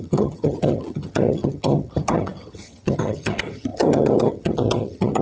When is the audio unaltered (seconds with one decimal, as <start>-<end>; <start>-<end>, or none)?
none